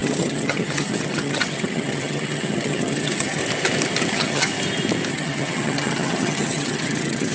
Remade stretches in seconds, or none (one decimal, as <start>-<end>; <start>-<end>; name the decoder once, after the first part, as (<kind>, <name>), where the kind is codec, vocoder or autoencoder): 0.0-3.4 (vocoder, HiFi-GAN); 4.1-4.5; 5.1-7.3